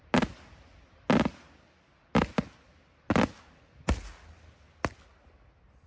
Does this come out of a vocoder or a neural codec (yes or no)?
no